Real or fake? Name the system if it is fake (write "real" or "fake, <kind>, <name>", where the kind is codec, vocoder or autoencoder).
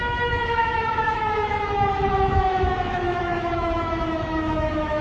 fake, autoencoder, DAC-VAE